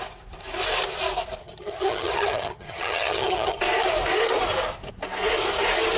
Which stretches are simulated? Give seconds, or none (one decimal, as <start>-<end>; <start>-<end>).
1.4-3.6